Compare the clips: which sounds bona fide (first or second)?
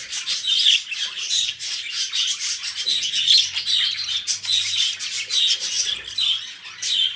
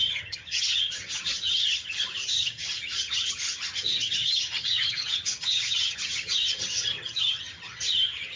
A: first